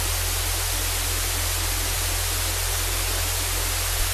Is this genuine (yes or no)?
yes